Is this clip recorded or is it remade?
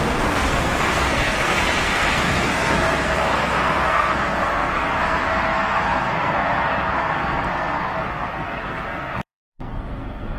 remade